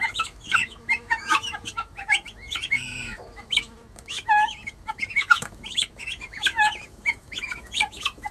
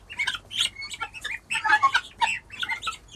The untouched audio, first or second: second